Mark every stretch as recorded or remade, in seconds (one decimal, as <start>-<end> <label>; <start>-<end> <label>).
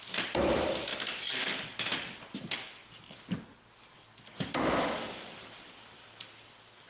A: 0.0-6.9 recorded